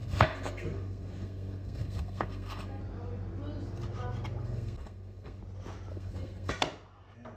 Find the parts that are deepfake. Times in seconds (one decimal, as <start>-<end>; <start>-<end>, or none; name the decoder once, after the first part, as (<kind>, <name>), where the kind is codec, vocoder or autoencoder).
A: 0.0-2.8 (codec, SNAC); 4.4-5.4; 5.9-6.5